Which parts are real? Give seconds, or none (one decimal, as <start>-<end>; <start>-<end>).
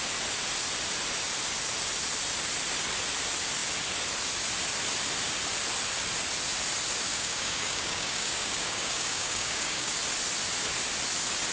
0.0-7.1; 10.0-11.5